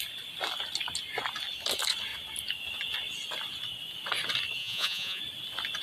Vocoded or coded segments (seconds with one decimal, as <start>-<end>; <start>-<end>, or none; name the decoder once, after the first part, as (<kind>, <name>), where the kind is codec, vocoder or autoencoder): 4.6-5.2 (vocoder, Vocos)